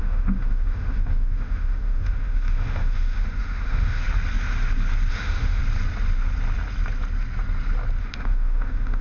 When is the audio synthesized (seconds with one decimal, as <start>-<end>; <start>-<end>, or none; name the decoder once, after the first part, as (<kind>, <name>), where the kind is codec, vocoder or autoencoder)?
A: 0.0-4.0 (autoencoder, DAC-VAE); 5.1-5.6; 8.0-9.0